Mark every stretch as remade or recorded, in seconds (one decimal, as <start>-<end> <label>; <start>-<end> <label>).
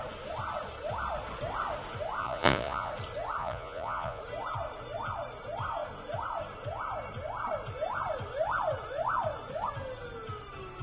0.0-2.2 recorded; 2.2-2.9 remade; 2.9-3.4 recorded; 3.4-4.2 remade; 4.2-10.8 recorded